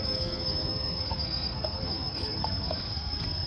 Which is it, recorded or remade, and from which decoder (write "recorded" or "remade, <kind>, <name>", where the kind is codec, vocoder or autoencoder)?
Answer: remade, codec, SNAC